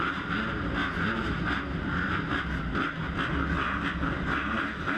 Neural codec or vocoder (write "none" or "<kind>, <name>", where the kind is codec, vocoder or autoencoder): none